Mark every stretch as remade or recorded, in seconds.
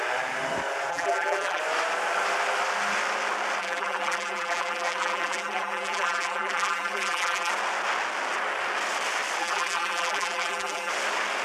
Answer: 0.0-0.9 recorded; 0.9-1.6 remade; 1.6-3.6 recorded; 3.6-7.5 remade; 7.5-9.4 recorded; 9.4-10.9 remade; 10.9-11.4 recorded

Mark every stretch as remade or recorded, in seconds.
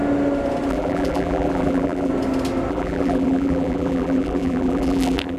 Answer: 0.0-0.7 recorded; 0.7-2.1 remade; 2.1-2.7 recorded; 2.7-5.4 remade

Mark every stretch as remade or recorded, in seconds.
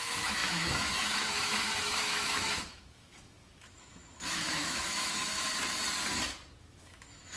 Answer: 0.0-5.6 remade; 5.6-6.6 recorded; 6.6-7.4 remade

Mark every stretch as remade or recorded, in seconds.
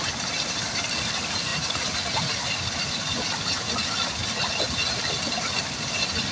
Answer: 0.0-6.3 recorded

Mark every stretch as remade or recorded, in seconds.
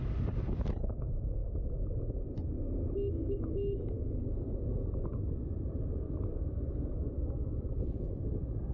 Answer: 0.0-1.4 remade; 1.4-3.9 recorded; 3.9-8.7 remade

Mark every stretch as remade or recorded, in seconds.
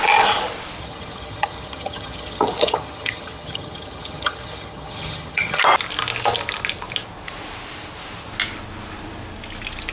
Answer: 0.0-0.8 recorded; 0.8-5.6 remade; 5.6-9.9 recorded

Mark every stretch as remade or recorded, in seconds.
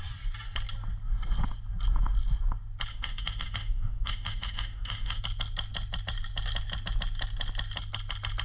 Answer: 0.0-2.9 recorded; 2.9-5.2 remade; 5.2-8.4 recorded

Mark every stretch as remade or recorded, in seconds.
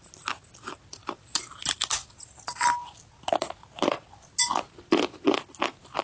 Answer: 0.0-6.0 recorded